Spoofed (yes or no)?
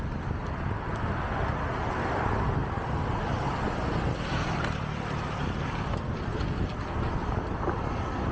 no